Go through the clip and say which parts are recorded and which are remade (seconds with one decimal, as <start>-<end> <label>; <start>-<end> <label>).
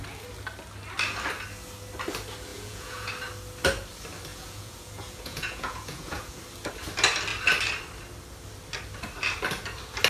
0.0-2.5 recorded; 2.5-3.1 remade; 3.1-4.3 recorded; 4.3-6.4 remade; 6.4-10.1 recorded